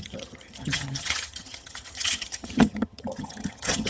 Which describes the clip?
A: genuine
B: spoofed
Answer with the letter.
B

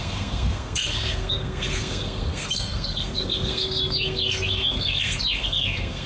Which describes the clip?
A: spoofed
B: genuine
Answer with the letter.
A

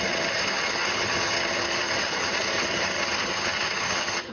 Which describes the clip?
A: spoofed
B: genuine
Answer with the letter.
A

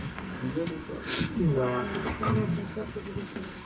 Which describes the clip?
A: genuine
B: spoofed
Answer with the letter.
B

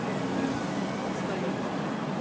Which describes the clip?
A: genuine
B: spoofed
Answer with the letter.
A